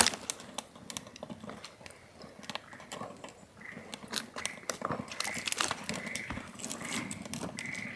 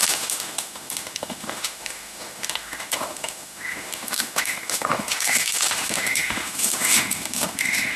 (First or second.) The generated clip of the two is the second